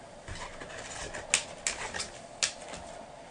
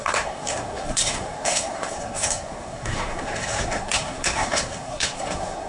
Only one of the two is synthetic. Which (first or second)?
second